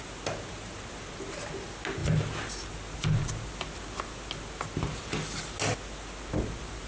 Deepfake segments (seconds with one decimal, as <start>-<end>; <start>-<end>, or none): none